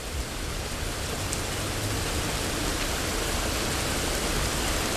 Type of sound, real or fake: real